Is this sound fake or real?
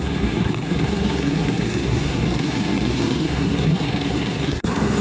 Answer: fake